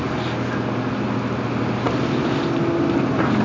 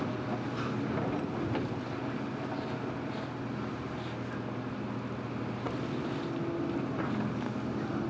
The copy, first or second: second